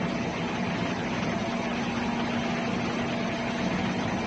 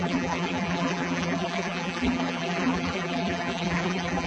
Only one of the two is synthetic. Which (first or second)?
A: second